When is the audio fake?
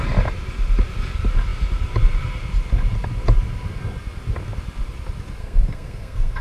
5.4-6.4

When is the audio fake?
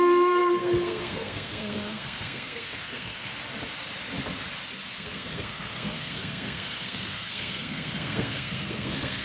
0.0-3.3; 4.9-9.2